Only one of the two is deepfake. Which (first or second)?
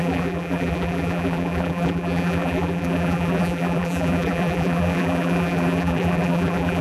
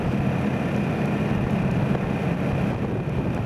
first